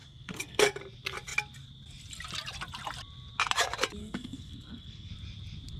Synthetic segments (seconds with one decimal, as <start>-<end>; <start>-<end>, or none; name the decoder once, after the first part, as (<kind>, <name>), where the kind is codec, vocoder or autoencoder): 0.0-0.8 (codec, SNAC); 4.0-5.1